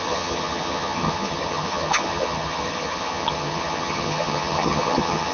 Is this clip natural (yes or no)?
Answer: no